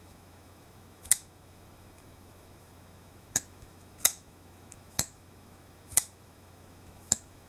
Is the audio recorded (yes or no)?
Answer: no